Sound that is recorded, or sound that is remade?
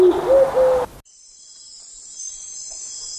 recorded